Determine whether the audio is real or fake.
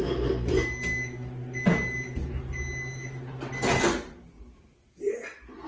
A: real